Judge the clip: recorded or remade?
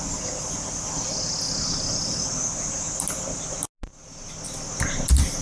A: recorded